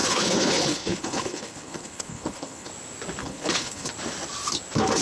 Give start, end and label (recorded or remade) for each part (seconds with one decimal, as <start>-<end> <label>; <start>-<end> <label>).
0.0-2.7 remade; 2.7-3.2 recorded; 3.2-3.9 remade; 3.9-5.0 recorded